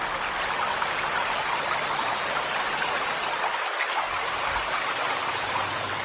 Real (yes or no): yes